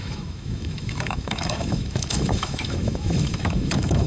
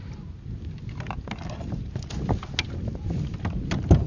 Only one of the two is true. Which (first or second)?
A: second